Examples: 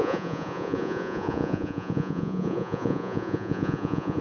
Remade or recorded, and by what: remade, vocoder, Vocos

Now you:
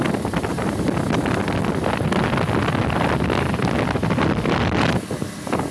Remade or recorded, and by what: recorded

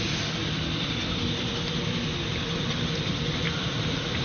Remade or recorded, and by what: recorded